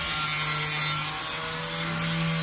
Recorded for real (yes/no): yes